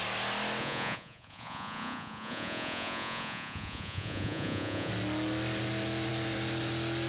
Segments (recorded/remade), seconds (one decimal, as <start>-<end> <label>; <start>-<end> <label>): 0.0-0.6 recorded; 0.6-4.9 remade; 4.9-7.1 recorded